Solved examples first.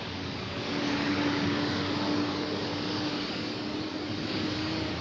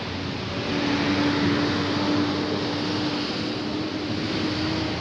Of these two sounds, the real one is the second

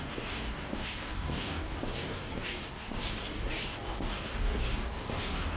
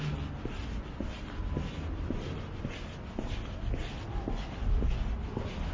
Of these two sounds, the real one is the second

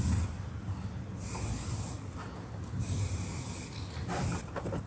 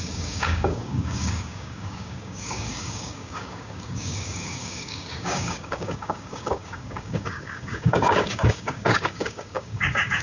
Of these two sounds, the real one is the first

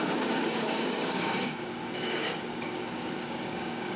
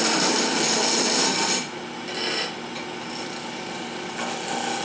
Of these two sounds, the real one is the second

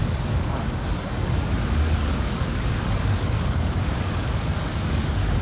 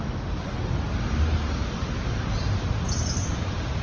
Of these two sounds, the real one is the second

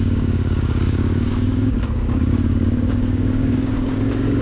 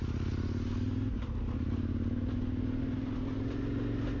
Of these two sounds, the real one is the second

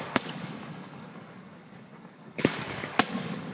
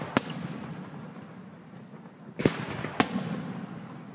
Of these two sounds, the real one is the second